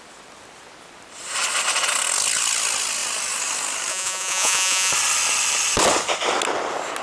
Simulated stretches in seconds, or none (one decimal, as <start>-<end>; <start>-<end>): 3.9-4.9